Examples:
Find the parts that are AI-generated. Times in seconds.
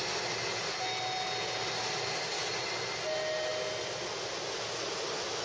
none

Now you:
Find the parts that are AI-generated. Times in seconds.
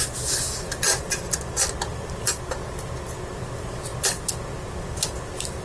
1.9-2.9 (vocoder, BigVGAN v2)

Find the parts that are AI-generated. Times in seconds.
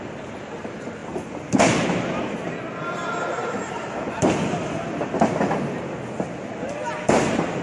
1.0-1.9 (vocoder, BigVGAN v2); 3.4-5.1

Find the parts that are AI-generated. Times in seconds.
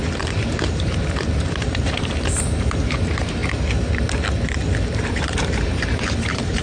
0.0-3.4 (vocoder, BigVGAN v2); 4.9-6.6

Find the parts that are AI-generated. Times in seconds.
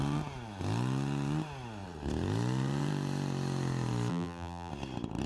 4.1-4.7 (vocoder, BigVGAN v2)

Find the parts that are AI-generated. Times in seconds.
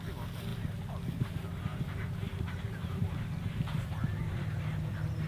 1.7-4.6 (vocoder, BigVGAN v2)